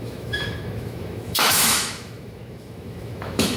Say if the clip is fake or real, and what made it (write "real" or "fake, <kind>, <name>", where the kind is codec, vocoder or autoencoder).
fake, autoencoder, DAC-VAE